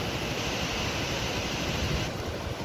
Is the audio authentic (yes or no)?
yes